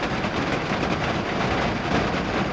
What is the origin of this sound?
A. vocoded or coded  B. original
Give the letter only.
B